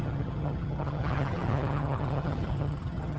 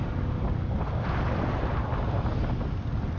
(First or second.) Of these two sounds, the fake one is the first